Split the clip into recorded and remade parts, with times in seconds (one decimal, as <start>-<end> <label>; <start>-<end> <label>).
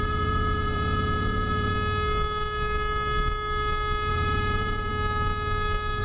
0.0-1.7 remade; 1.7-4.1 recorded; 4.1-4.9 remade; 4.9-6.0 recorded